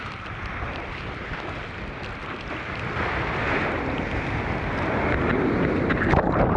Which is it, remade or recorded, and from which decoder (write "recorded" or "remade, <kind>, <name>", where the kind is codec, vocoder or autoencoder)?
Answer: recorded